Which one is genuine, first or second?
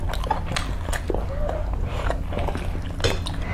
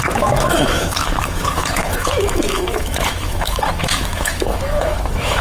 first